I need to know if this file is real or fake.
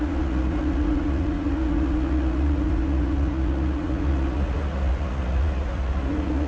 fake